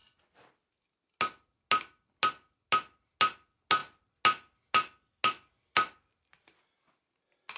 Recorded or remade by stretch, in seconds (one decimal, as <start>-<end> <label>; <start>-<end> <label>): 0.0-7.6 recorded